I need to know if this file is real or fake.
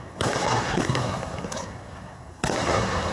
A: fake